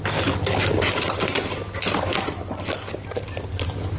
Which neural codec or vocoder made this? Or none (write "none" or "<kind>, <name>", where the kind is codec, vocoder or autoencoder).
none